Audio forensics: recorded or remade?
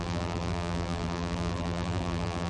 remade